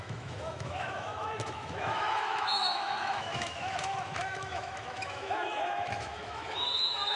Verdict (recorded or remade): remade